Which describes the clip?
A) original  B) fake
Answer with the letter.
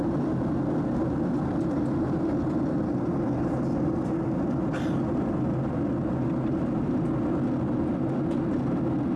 A